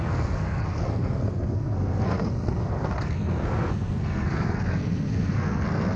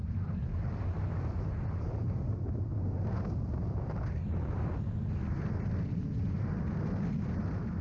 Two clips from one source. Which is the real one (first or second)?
second